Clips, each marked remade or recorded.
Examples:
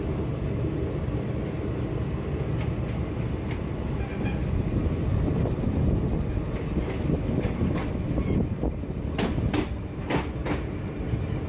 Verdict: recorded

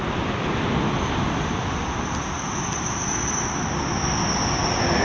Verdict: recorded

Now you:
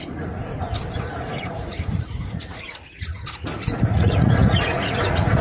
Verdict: remade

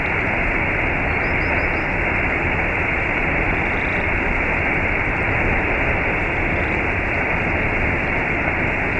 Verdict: recorded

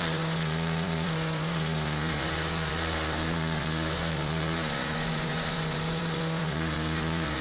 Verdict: remade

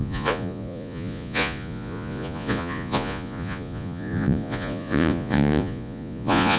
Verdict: remade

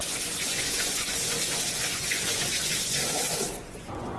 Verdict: remade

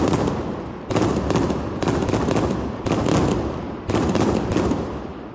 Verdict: recorded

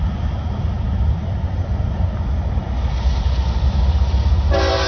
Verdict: recorded